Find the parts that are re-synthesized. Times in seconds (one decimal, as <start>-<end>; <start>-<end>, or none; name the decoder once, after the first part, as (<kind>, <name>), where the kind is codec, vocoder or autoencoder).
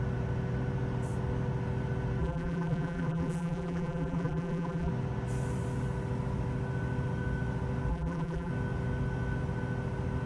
2.2-4.9 (vocoder, BigVGAN v2); 7.9-8.5